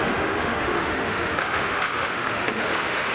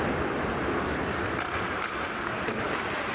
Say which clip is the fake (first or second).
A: first